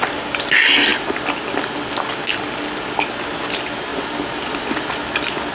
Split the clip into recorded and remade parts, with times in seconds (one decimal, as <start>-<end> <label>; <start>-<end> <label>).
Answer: 0.0-0.9 recorded; 0.9-1.9 remade; 1.9-3.9 recorded; 3.9-4.9 remade; 4.9-5.5 recorded